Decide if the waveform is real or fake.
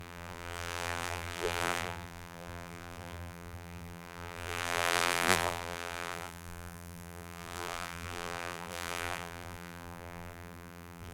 fake